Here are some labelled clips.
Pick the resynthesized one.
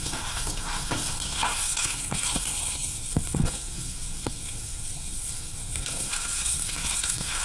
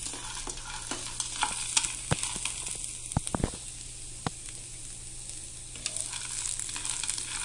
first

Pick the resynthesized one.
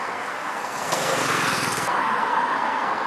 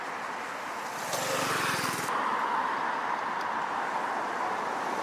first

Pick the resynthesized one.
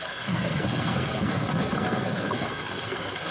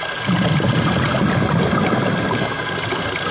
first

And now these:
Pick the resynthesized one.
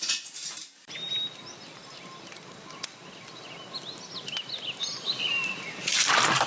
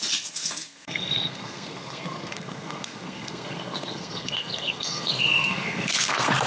second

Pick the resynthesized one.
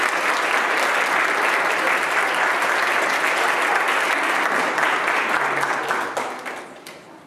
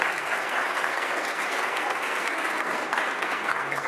second